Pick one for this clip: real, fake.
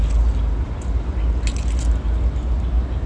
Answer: real